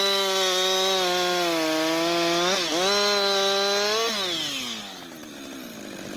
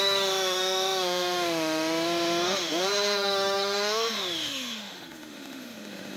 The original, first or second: first